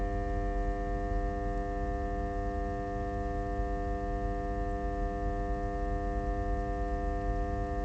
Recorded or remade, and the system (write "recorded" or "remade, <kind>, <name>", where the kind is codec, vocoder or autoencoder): recorded